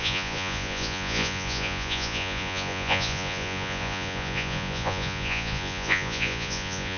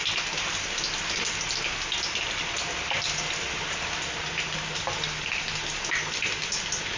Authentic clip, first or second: second